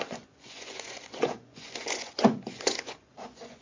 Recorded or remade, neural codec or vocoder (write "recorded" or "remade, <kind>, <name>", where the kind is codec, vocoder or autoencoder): remade, vocoder, Vocos